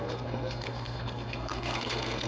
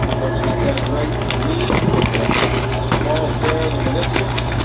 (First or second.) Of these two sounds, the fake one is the first